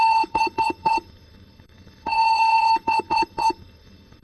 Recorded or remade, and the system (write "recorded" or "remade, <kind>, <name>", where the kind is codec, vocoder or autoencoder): remade, codec, HILCodec